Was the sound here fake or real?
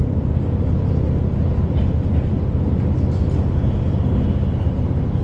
real